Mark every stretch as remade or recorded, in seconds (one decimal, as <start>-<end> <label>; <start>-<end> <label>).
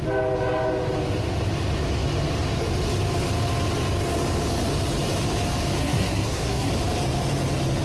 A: 0.0-5.8 recorded; 5.8-6.7 remade; 6.7-7.8 recorded